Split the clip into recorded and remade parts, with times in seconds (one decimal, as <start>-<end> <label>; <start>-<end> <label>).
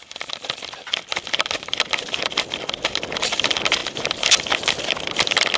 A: 0.0-5.6 recorded